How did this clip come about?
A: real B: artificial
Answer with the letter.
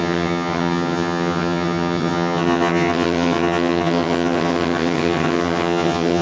B